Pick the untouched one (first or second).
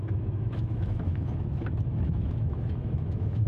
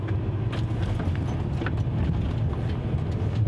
second